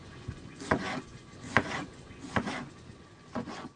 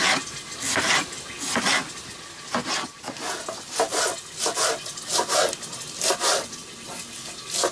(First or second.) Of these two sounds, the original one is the second